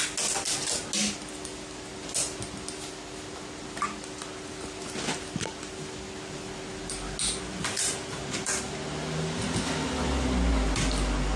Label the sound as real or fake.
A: real